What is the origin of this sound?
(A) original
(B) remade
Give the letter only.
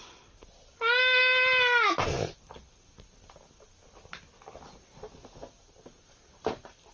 A